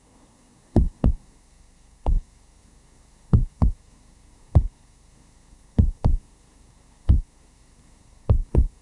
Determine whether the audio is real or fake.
fake